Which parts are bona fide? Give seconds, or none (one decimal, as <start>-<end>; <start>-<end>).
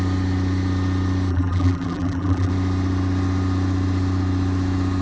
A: 0.0-1.3; 2.5-5.0